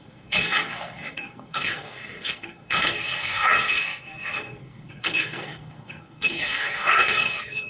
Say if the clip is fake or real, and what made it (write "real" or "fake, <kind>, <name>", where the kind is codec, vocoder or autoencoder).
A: fake, codec, SNAC